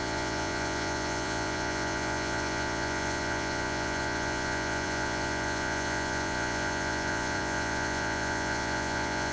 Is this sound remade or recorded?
remade